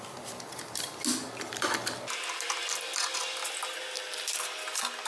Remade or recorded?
recorded